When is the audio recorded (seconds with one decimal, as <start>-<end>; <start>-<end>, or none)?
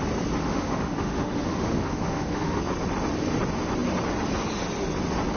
0.0-0.4; 2.6-5.4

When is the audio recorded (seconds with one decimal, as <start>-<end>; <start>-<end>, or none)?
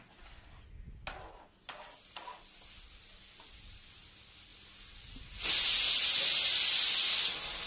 0.0-7.7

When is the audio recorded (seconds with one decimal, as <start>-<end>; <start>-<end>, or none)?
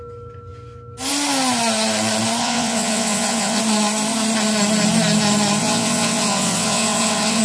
0.0-2.4; 3.6-5.6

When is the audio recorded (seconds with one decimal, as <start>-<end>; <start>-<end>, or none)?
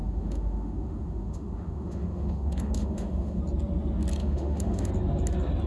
3.4-4.2; 4.9-5.7